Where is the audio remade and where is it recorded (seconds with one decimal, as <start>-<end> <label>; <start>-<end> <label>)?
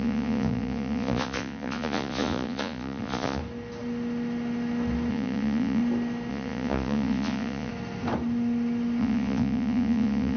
0.0-3.4 remade; 3.4-5.1 recorded; 5.1-5.8 remade; 5.8-6.3 recorded; 6.3-7.7 remade; 7.7-9.0 recorded; 9.0-10.4 remade